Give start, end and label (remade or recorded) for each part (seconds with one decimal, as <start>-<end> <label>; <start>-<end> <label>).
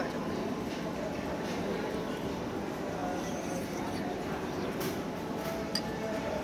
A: 0.0-6.4 recorded